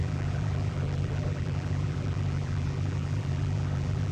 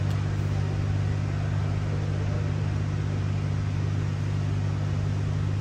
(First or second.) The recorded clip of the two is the second